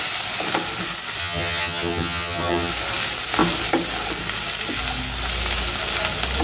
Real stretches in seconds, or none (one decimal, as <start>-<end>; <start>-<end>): 0.0-1.2; 2.7-6.4